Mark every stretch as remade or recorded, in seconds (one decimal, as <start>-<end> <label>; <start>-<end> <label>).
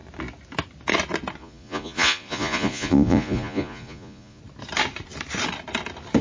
0.0-1.4 recorded; 1.4-4.4 remade; 4.4-6.2 recorded